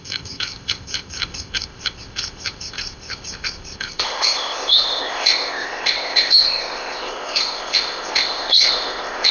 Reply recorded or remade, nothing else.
remade